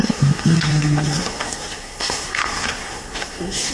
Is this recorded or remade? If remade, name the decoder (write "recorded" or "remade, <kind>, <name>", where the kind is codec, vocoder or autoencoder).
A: remade, codec, SNAC